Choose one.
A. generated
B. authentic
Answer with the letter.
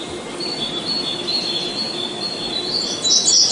B